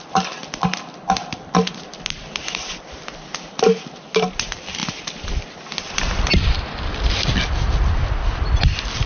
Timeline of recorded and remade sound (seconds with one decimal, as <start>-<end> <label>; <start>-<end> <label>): 0.0-9.1 recorded